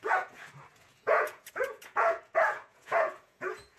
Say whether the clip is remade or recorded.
remade